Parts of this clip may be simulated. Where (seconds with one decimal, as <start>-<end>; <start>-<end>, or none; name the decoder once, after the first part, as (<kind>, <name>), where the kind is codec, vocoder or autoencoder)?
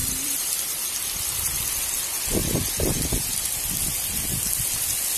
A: 0.0-0.8 (vocoder, BigVGAN v2); 2.4-3.1